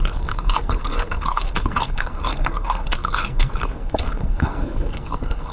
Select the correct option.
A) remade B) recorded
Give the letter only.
A